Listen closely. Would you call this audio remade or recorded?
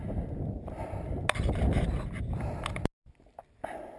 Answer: recorded